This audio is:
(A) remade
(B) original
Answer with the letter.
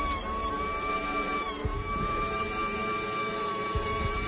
A